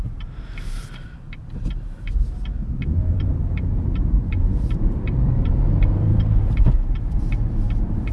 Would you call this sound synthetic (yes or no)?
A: yes